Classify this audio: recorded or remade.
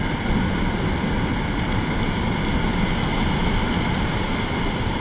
recorded